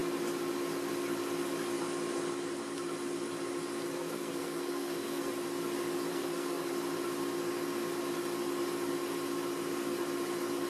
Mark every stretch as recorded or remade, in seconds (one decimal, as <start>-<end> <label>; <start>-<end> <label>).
0.0-3.9 recorded; 3.9-5.3 remade; 5.3-6.1 recorded; 6.1-6.7 remade; 6.7-10.7 recorded